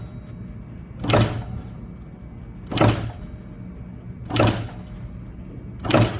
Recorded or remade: recorded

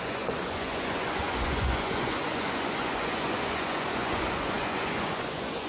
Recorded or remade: remade